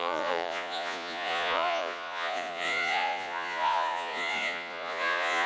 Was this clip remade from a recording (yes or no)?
yes